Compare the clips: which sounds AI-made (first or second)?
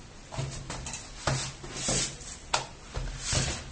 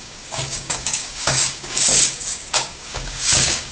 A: second